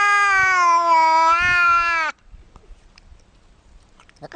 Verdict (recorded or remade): recorded